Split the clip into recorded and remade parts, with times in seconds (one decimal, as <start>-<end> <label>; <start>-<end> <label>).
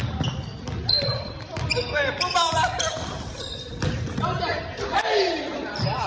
0.0-1.0 recorded; 1.0-3.7 remade; 3.7-5.0 recorded; 5.0-6.1 remade